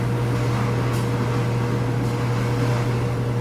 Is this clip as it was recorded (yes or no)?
yes